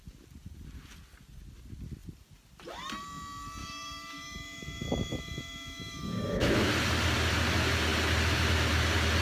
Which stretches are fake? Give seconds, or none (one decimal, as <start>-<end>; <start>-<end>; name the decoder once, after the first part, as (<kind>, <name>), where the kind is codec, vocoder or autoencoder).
3.6-6.7 (autoencoder, DAC-VAE)